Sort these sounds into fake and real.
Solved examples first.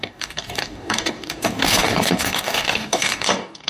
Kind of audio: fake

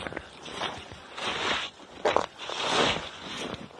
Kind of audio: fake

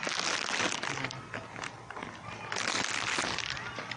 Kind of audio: real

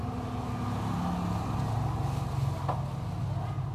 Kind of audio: real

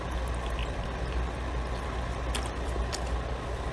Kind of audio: real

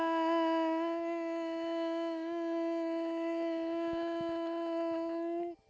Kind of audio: real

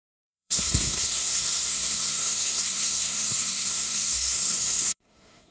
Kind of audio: fake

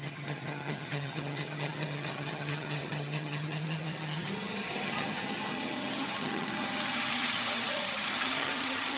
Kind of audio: fake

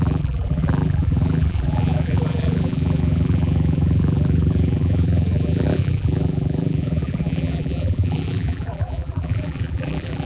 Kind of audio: fake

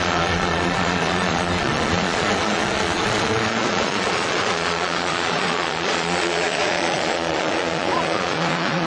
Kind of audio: fake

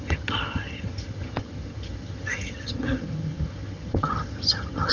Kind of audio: fake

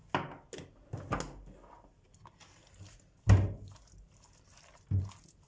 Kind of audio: real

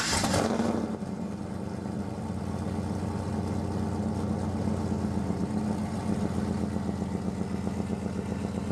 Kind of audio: real